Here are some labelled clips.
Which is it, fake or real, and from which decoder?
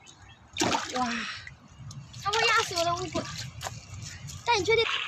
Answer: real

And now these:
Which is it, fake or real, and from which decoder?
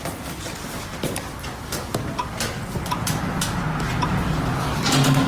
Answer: real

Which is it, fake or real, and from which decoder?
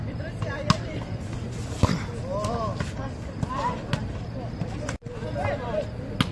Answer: real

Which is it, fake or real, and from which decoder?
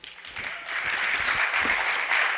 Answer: real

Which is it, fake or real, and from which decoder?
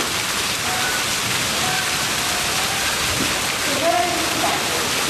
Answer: real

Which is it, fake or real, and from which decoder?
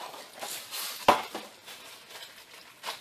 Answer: real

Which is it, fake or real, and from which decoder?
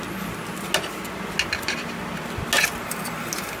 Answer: real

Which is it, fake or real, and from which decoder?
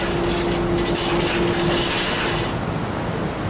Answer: real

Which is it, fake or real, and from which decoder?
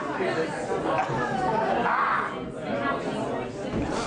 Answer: real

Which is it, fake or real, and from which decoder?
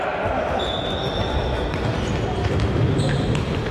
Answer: real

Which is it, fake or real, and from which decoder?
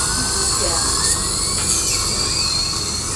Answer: real